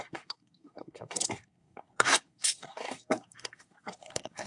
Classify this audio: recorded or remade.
remade